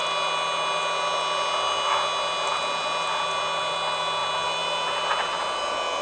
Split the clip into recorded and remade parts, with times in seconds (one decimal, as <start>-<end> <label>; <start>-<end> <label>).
0.0-6.0 recorded